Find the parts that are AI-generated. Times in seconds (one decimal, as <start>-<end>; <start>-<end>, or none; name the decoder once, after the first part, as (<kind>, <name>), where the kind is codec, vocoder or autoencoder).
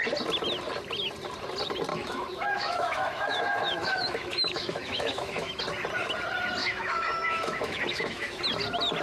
1.9-5.6 (autoencoder, DAC-VAE); 6.6-8.4